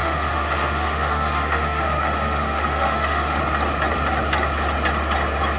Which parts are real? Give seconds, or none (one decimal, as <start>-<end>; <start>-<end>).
3.4-5.6